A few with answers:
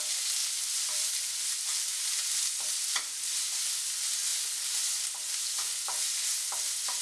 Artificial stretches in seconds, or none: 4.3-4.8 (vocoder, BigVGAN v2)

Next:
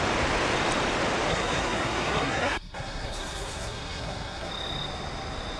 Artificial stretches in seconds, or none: 1.3-4.5 (codec, SNAC)

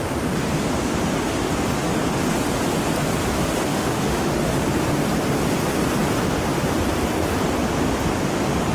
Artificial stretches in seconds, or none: 3.7-4.5 (autoencoder, DAC-VAE)

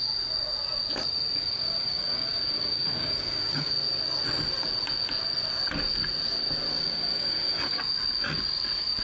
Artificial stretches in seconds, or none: 1.4-3.7 (codec, DAC); 6.7-7.8

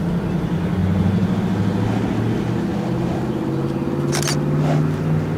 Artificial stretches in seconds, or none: none